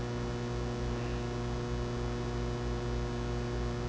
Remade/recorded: recorded